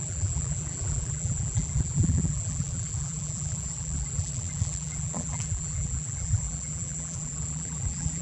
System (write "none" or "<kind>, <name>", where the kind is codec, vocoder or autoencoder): vocoder, BigVGAN v2